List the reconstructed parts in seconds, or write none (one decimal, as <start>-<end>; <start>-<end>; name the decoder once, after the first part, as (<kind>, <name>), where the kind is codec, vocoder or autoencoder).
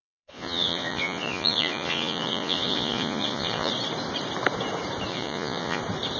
0.0-3.7 (vocoder, Vocos); 5.1-5.8